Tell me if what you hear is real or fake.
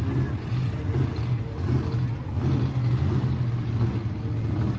real